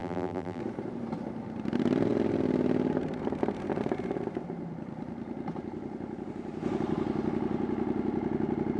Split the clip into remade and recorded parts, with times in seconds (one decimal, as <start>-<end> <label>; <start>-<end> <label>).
0.0-0.6 remade; 0.6-8.8 recorded